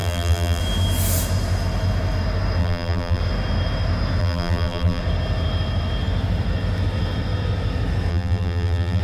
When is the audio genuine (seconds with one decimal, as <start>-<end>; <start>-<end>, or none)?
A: 0.6-2.6; 3.2-4.2; 5.0-8.1